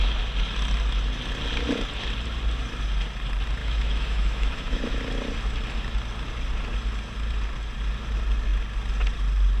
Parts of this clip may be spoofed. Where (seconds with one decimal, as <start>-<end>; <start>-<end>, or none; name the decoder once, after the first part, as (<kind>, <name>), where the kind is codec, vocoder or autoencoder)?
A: 3.6-5.0 (autoencoder, DAC-VAE)